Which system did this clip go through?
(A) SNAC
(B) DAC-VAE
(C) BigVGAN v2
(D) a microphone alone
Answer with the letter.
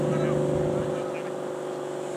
D